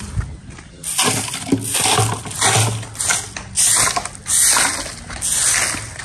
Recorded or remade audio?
recorded